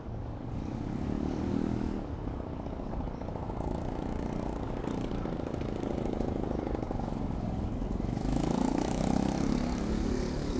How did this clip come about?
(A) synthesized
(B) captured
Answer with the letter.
A